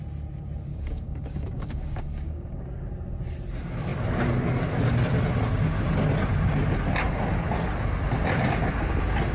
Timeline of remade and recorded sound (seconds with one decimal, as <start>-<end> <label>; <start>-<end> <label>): 0.0-0.7 recorded; 0.7-2.9 remade; 2.9-9.3 recorded